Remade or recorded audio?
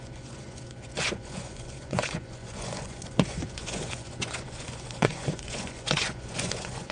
remade